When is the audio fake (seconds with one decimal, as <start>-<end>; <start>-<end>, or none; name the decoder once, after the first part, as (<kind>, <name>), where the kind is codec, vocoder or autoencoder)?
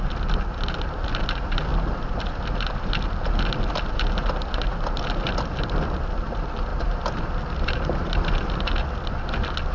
none